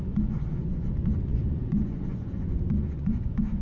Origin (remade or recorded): remade